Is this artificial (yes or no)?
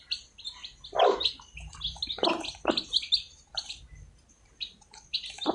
no